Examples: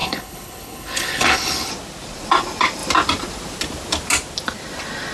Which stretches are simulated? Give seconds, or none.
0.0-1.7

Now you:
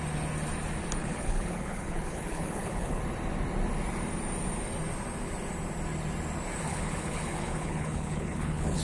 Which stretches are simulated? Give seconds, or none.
1.0-3.0; 6.7-8.8

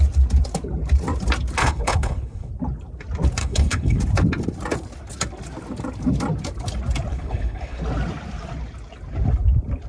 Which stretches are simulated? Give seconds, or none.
1.6-2.5; 3.4-4.0; 7.1-7.8

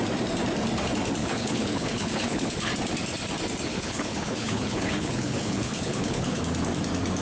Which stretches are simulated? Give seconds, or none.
1.2-2.7; 3.7-6.4